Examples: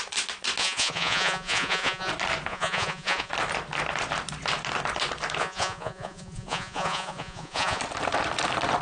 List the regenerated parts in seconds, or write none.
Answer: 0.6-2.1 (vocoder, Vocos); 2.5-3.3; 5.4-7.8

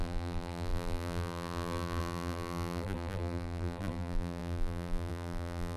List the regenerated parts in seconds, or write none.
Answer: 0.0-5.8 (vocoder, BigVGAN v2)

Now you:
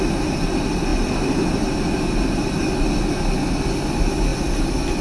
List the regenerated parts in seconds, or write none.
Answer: none